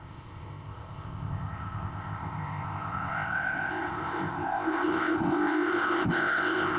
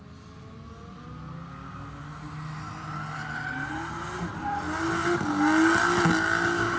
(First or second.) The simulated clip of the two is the first